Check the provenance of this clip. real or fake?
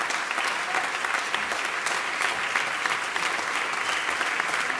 real